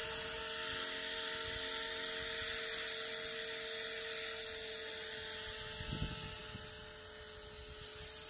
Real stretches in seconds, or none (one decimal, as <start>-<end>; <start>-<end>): 0.0-8.3